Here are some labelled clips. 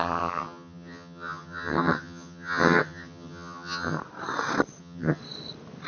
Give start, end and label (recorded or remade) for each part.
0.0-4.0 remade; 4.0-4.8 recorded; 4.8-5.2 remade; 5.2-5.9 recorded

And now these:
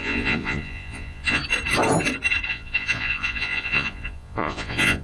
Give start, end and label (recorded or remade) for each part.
0.0-1.4 remade; 1.4-2.5 recorded; 2.5-5.0 remade